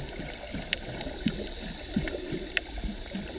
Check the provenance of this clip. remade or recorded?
recorded